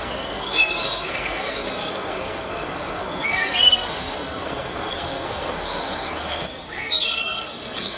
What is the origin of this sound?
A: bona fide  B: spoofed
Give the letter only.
B